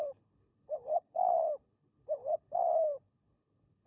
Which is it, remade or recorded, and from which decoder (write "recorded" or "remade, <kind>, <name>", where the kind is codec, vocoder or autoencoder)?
remade, codec, HILCodec